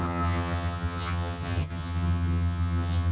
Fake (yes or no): yes